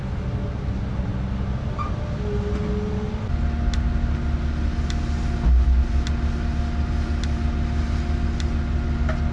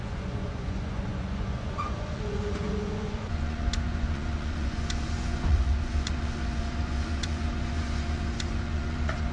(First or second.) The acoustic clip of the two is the first